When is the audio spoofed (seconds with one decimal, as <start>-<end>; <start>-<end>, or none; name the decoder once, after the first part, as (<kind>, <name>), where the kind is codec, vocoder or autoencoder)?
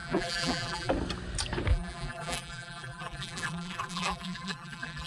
0.0-0.9 (vocoder, BigVGAN v2); 1.7-5.1